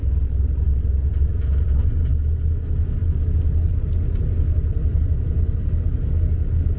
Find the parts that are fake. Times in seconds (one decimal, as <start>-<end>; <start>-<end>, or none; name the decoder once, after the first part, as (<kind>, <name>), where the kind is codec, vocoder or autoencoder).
none